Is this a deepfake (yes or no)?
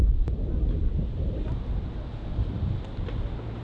no